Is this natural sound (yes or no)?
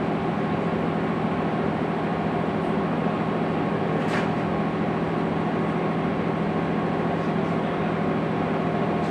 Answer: yes